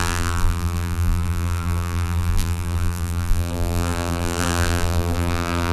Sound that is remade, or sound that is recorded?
remade